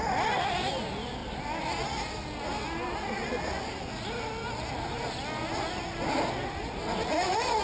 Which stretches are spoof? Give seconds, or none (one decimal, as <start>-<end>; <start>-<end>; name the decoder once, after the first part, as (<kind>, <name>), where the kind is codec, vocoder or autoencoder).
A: none